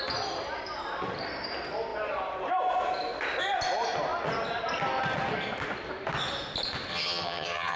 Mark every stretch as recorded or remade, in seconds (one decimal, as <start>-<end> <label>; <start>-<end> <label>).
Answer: 0.0-6.9 recorded; 6.9-7.8 remade